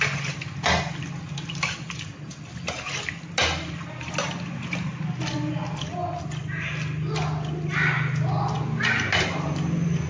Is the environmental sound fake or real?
real